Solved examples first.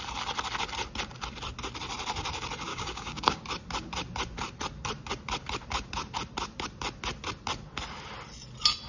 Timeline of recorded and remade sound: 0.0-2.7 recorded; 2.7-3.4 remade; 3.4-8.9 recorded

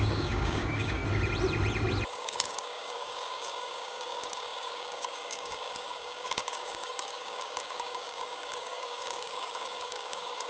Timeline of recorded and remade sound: 0.0-1.0 remade; 1.0-2.1 recorded; 2.1-10.5 remade

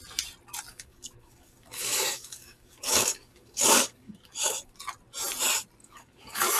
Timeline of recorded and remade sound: 0.0-0.7 recorded; 0.7-4.7 remade; 4.7-5.8 recorded; 5.8-6.6 remade

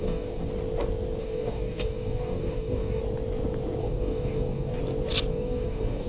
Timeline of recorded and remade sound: 0.0-0.5 remade; 0.5-1.2 recorded; 1.2-3.0 remade; 3.0-3.8 recorded; 3.8-4.8 remade; 4.8-5.3 recorded; 5.3-6.1 remade

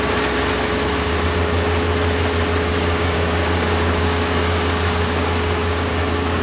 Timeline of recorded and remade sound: 0.0-2.7 recorded; 2.7-6.4 remade

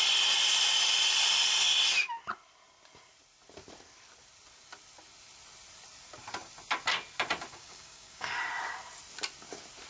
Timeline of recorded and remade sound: 0.0-7.5 recorded; 7.5-8.3 remade; 8.3-9.9 recorded

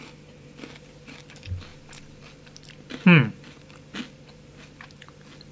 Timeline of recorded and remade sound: 0.0-5.5 recorded

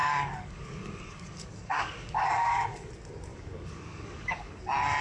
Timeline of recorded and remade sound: 0.0-2.9 remade; 2.9-3.3 recorded; 3.3-4.6 remade; 4.6-5.0 recorded